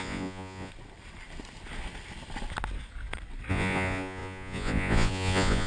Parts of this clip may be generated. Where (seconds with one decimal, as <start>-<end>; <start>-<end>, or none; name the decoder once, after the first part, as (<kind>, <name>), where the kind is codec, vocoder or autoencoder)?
0.0-0.7 (vocoder, Vocos); 3.5-5.7